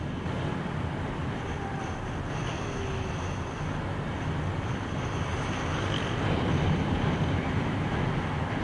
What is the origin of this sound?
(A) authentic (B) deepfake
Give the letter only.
A